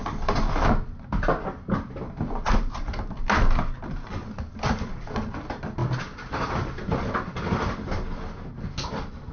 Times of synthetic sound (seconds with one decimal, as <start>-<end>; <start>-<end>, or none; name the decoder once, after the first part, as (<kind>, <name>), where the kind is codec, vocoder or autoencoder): none